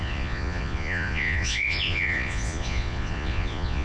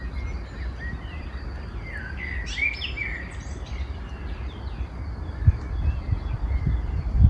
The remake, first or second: first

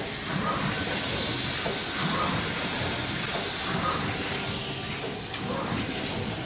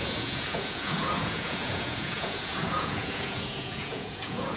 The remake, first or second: second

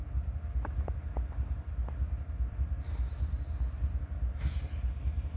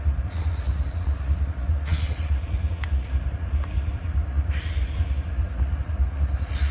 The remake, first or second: second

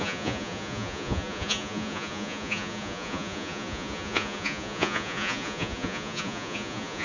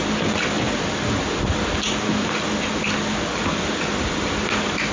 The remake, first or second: first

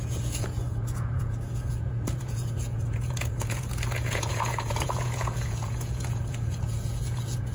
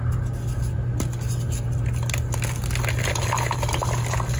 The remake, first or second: first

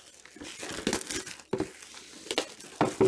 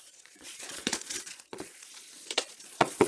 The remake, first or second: second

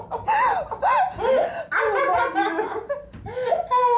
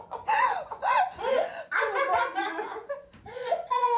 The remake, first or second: second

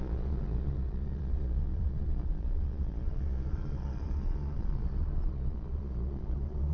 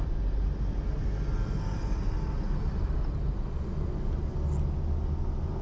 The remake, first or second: first